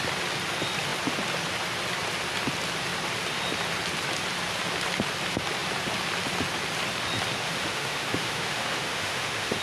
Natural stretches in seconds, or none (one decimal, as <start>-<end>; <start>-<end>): 0.0-7.4